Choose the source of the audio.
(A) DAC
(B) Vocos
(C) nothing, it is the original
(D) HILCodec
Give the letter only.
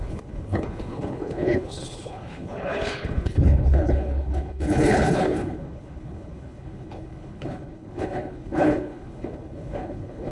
D